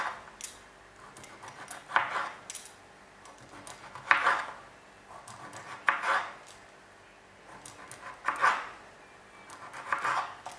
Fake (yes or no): no